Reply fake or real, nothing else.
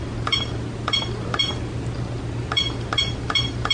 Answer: fake